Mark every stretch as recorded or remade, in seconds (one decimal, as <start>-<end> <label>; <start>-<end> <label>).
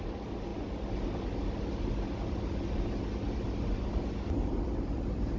0.0-5.4 recorded